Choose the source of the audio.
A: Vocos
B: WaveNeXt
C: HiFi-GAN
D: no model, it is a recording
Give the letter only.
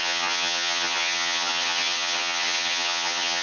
C